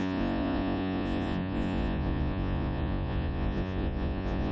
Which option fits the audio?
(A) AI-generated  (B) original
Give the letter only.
A